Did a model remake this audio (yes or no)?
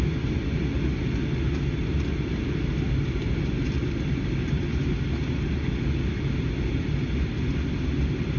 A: no